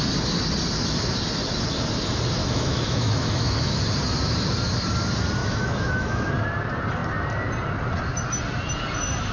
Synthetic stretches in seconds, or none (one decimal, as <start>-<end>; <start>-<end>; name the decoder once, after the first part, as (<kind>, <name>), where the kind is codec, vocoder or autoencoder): 2.4-3.8 (autoencoder, DAC-VAE); 5.4-6.3

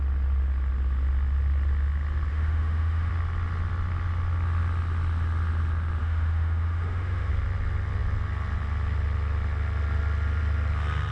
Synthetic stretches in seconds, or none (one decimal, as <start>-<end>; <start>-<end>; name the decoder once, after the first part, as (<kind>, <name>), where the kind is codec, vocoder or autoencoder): 2.3-3.1 (autoencoder, DAC-VAE); 6.0-7.3

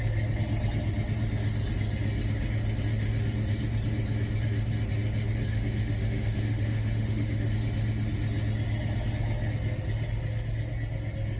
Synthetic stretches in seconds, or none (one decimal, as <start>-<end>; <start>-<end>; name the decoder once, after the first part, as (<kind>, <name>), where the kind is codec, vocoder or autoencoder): 5.5-7.5 (autoencoder, DAC-VAE)

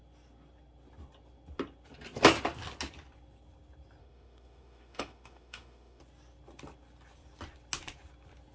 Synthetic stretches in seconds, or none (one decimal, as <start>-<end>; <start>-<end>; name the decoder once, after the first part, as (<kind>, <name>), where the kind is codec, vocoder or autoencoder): 4.0-6.0 (autoencoder, DAC-VAE)